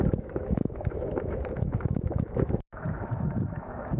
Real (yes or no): no